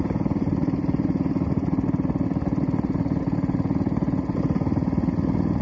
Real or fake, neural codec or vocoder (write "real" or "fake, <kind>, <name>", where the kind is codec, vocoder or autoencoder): real